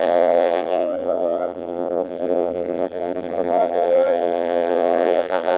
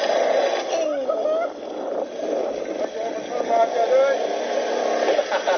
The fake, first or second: first